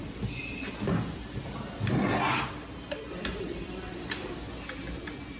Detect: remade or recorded recorded